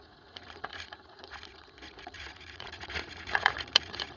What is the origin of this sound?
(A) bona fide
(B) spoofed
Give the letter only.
B